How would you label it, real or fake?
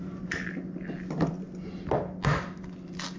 real